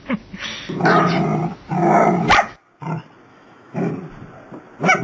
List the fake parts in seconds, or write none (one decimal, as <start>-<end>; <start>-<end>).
3.3-3.9